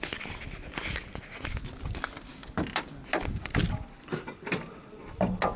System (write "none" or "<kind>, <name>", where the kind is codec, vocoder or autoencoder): none